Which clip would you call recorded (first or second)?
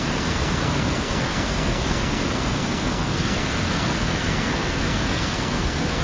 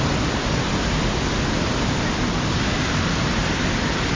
second